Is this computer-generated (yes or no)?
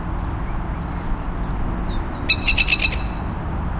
no